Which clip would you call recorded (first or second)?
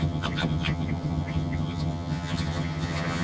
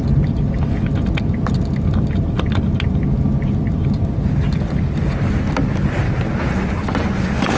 second